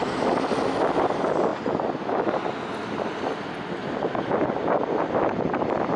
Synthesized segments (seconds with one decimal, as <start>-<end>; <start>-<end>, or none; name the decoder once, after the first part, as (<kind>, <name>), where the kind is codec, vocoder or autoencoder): none